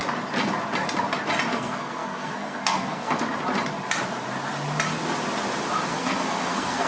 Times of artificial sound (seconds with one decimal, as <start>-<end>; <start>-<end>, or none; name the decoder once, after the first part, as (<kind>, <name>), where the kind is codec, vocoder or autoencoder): 1.5-3.2 (codec, SNAC); 5.9-6.9